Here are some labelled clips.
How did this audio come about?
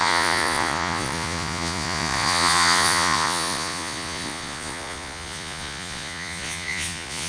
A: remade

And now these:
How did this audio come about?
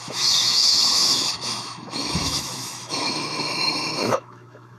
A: remade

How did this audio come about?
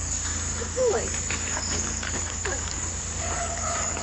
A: remade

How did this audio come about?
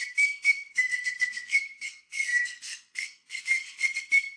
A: remade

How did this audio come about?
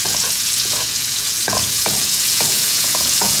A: remade